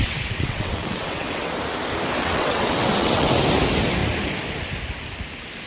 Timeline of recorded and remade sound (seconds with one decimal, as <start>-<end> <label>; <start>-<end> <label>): 0.0-1.5 remade; 1.5-2.2 recorded; 2.2-3.4 remade; 3.4-5.7 recorded